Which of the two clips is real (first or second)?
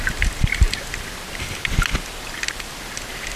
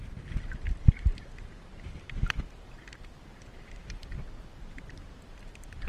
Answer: first